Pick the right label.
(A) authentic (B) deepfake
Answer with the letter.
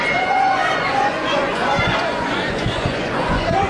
B